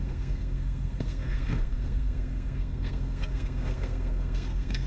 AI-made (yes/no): yes